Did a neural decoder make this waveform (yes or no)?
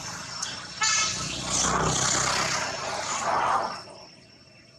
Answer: no